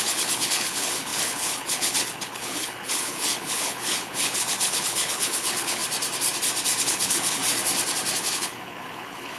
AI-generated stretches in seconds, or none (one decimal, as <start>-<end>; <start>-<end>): 0.0-5.8; 6.8-7.4; 8.2-9.4